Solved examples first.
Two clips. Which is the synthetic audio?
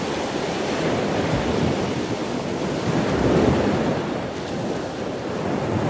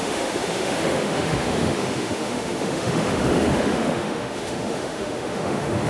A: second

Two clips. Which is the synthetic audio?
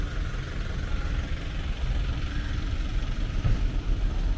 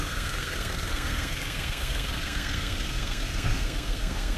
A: second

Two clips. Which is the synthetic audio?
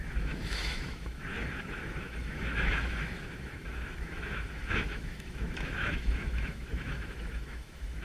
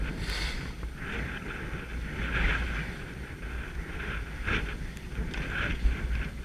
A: first